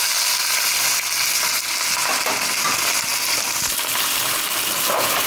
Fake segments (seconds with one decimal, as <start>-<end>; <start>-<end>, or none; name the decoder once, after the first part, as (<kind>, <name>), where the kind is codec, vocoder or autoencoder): none